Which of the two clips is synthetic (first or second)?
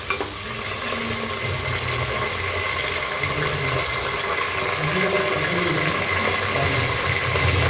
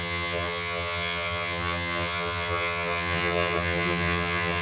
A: second